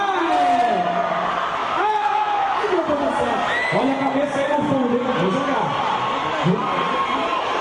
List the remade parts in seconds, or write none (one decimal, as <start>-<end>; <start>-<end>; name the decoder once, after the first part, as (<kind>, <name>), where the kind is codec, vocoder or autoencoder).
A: 1.6-2.6 (autoencoder, DAC-VAE)